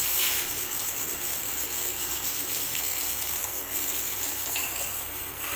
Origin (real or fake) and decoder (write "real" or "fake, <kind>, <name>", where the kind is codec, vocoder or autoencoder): fake, codec, SNAC